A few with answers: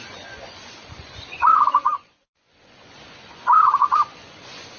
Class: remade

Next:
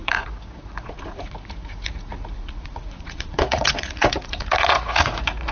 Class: remade